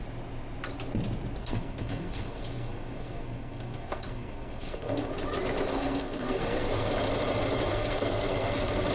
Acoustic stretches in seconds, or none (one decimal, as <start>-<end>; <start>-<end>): 0.0-1.4; 5.1-5.7; 6.9-7.7